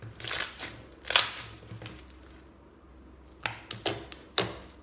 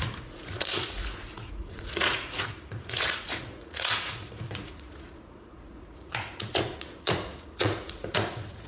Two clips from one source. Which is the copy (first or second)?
second